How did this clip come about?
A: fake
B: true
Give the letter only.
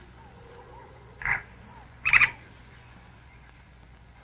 A